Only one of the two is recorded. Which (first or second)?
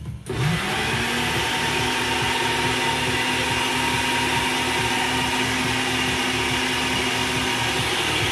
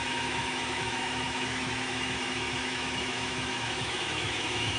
first